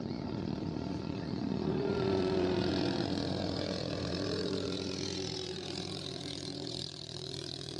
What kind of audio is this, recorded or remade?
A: remade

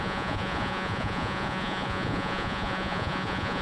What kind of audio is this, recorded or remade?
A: remade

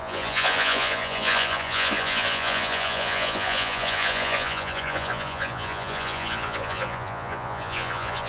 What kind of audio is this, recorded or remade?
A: remade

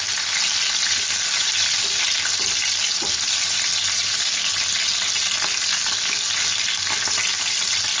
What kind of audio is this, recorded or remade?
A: recorded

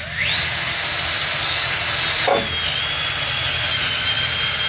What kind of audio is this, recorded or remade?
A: recorded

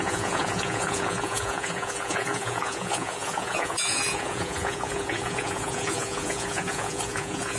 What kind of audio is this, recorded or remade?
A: remade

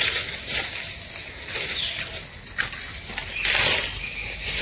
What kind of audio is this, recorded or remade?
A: recorded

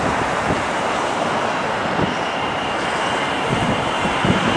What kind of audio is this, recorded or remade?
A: recorded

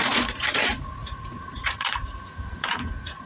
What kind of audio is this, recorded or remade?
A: remade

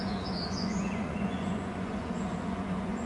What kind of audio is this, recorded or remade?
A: remade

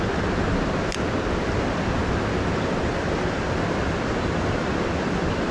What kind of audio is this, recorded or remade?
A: recorded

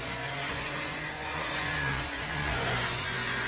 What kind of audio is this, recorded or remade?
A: remade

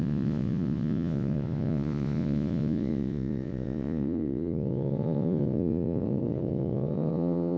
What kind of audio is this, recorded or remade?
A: remade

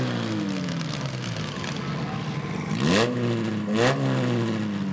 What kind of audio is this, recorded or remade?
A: recorded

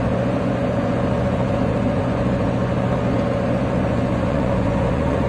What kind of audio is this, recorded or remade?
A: remade